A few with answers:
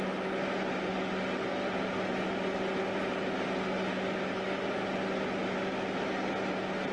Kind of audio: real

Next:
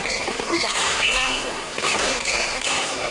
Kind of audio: fake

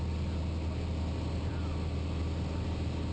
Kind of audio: real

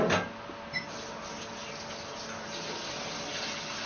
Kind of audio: real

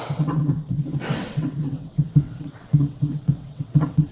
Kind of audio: fake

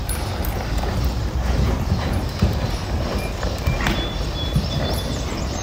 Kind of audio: fake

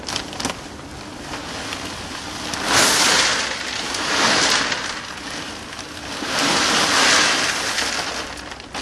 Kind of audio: real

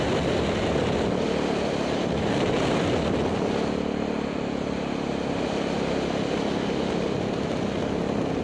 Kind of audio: real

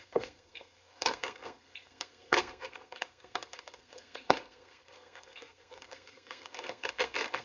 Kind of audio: fake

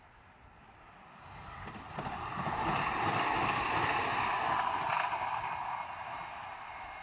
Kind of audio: real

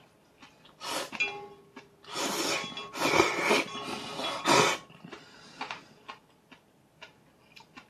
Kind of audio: real